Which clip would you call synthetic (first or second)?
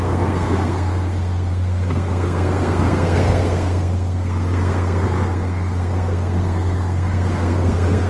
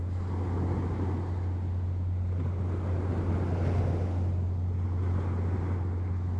first